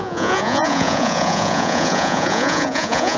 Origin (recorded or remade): remade